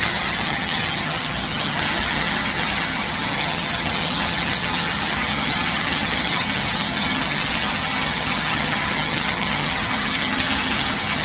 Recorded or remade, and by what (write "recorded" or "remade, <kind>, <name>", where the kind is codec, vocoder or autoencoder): remade, vocoder, HiFi-GAN